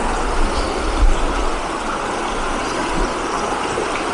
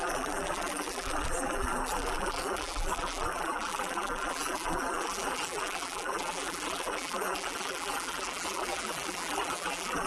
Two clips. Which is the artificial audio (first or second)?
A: second